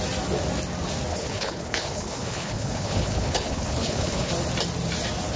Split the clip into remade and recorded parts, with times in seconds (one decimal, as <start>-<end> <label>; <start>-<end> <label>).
0.0-1.1 recorded; 1.1-4.3 remade; 4.3-5.4 recorded

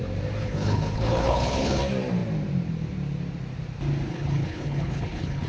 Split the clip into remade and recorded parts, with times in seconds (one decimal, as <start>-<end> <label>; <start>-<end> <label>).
0.0-0.4 recorded; 0.4-1.8 remade; 1.8-4.1 recorded; 4.1-5.5 remade